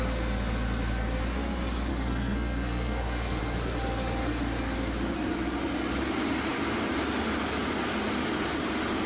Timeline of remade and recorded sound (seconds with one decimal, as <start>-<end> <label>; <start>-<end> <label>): 0.0-1.9 recorded; 1.9-3.4 remade; 3.4-9.1 recorded